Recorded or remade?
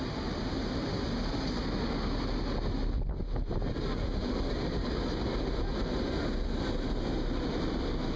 recorded